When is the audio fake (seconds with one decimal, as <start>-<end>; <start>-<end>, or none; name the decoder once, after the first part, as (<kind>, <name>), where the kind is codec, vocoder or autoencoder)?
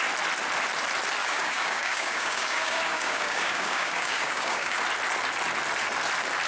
1.2-4.8 (codec, DAC)